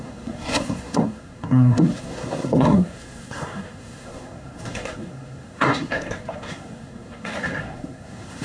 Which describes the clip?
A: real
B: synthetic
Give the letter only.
B